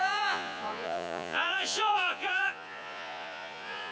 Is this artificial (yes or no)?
yes